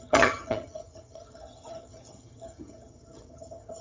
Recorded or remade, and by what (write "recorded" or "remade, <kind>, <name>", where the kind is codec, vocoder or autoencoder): remade, vocoder, HiFi-GAN